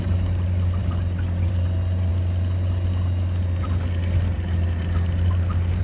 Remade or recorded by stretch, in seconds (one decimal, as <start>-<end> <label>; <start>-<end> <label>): 0.0-0.8 recorded; 0.8-1.5 remade; 1.5-5.8 recorded